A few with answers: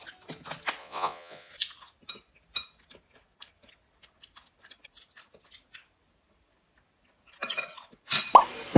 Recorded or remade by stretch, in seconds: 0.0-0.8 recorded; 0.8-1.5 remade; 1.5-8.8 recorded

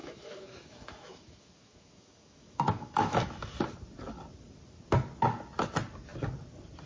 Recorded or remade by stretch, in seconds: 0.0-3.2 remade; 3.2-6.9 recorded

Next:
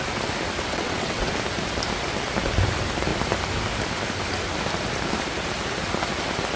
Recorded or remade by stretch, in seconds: 0.0-0.7 recorded; 0.7-1.3 remade; 1.3-6.6 recorded

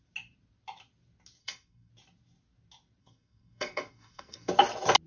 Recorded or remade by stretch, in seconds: 0.0-1.4 recorded; 1.4-1.9 remade; 1.9-3.0 recorded; 3.0-4.5 remade; 4.5-5.1 recorded

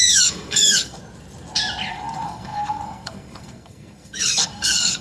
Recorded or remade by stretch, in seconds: 0.0-1.0 remade; 1.0-1.9 recorded; 1.9-5.0 remade

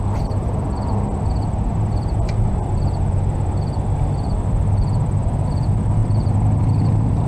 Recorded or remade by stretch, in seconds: 0.0-6.0 recorded; 6.0-7.3 remade

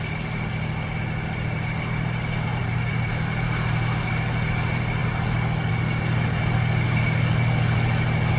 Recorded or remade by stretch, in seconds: 0.0-2.5 recorded; 2.5-3.1 remade; 3.1-8.4 recorded